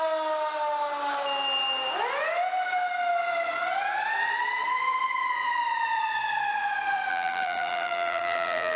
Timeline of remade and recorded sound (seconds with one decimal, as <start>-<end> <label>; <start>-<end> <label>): 0.0-7.1 recorded; 7.1-8.8 remade